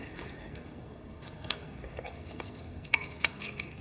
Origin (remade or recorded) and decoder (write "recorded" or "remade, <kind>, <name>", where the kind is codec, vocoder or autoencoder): remade, codec, SNAC